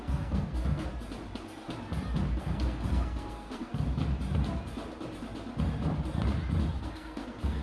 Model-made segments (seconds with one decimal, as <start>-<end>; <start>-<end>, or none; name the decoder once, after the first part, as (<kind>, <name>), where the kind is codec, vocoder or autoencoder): 0.0-0.9 (codec, SNAC); 2.4-3.7; 6.8-7.6